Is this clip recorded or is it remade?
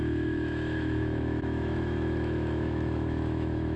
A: remade